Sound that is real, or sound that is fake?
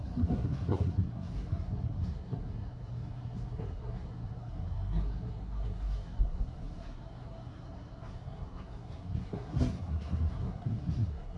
fake